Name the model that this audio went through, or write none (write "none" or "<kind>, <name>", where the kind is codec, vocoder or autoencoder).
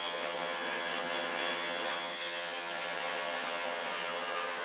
vocoder, HiFi-GAN